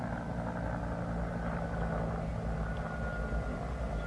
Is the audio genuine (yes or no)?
yes